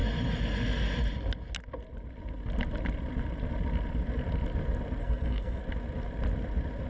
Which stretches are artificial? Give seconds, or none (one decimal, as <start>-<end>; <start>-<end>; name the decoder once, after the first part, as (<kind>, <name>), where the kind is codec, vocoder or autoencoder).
5.0-5.6 (codec, SNAC)

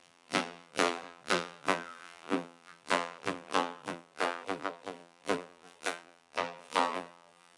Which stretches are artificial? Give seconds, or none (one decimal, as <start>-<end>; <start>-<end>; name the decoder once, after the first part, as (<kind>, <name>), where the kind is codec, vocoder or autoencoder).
0.0-7.6 (vocoder, BigVGAN v2)

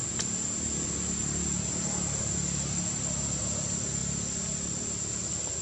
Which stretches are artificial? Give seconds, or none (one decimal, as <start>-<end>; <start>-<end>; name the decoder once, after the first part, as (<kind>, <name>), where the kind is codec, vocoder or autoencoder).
none

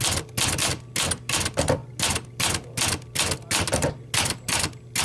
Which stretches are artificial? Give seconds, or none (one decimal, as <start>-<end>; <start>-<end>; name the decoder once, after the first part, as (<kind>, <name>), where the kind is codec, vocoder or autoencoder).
none

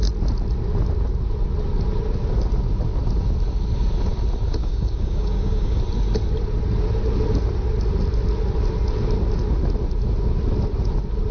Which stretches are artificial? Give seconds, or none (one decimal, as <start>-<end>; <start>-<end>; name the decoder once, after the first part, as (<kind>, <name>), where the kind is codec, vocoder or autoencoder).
4.6-5.8 (codec, DAC)